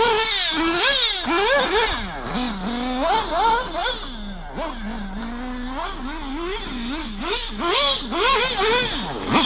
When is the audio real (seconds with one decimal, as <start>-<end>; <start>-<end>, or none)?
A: 0.0-7.0; 8.4-9.5